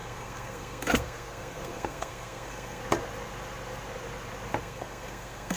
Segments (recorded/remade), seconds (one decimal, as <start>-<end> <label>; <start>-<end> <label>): 0.0-2.8 remade; 2.8-4.6 recorded; 4.6-5.6 remade